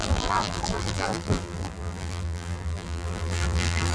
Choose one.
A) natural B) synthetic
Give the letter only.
B